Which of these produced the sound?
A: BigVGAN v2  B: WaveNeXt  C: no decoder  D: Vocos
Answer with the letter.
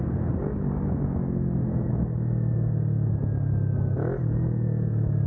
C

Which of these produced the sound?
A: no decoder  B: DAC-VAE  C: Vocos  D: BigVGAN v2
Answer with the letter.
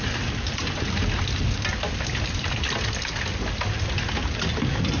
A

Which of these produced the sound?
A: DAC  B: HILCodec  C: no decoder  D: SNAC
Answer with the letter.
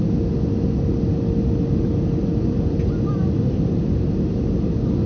C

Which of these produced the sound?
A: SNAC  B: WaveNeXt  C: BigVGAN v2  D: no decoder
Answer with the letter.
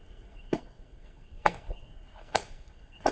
A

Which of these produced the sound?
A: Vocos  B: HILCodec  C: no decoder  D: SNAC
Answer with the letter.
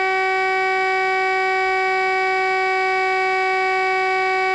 C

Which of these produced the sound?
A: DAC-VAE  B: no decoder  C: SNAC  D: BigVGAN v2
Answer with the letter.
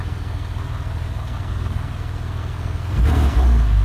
C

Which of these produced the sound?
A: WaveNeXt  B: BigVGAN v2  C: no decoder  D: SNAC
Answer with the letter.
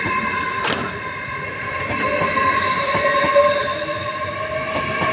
B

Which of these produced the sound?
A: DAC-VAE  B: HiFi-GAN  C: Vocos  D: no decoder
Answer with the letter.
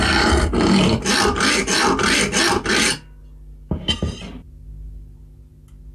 D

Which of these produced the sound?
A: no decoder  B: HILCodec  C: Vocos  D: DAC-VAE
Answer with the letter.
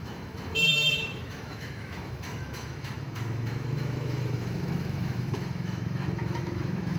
D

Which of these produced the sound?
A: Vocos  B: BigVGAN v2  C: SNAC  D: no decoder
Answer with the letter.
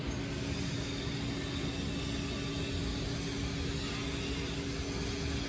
D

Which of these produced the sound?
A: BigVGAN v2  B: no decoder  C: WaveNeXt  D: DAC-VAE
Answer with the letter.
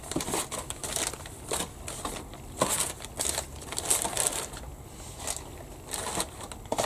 B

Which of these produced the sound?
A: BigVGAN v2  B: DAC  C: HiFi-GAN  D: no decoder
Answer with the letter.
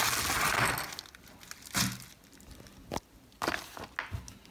D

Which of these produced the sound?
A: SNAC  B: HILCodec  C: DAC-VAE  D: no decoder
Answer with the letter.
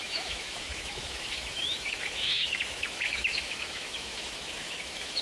C